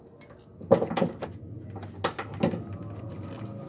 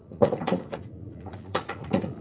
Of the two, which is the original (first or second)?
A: first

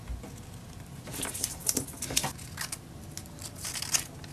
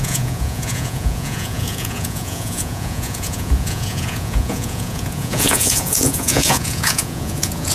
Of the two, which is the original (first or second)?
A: first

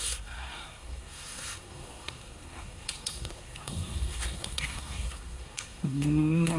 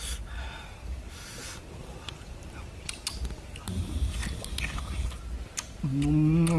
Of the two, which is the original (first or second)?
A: second